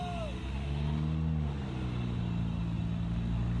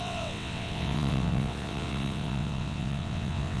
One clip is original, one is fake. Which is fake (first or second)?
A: second